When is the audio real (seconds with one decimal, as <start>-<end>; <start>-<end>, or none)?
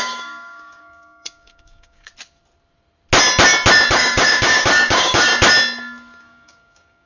2.1-3.9; 5.3-6.2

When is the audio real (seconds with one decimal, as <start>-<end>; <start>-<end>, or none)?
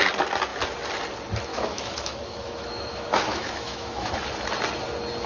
0.0-1.5; 4.1-5.3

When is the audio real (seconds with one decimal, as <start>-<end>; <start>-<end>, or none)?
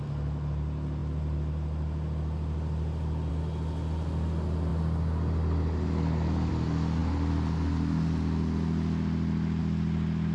0.0-10.3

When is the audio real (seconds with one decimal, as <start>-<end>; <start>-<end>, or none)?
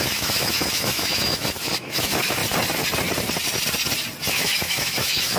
2.4-4.3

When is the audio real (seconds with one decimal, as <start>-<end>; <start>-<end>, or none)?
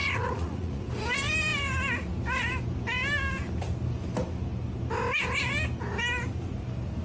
0.8-7.0